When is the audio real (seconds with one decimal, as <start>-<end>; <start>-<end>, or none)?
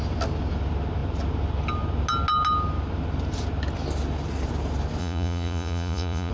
0.0-5.0